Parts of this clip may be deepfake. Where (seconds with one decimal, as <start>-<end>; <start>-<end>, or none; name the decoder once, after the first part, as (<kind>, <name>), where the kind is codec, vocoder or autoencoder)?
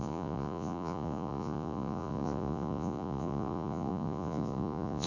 0.0-5.1 (vocoder, Vocos)